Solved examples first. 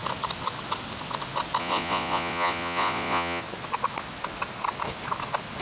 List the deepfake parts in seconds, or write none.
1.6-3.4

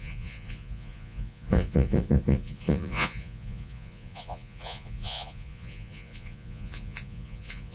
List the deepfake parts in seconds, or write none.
0.0-7.7

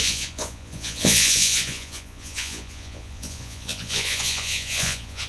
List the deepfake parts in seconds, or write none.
0.0-5.3

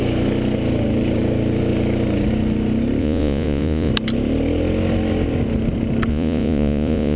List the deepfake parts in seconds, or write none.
3.0-3.9; 6.1-7.2